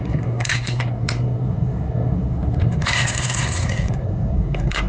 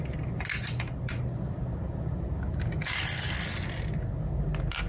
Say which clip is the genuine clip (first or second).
second